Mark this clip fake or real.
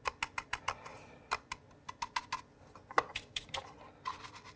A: real